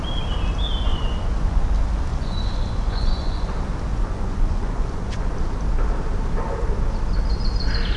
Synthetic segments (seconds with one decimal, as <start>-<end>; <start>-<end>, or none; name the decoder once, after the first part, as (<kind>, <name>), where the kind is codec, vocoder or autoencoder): 0.9-1.7 (vocoder, Vocos); 2.1-3.5; 3.9-5.3